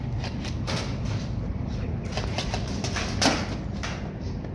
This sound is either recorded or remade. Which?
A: recorded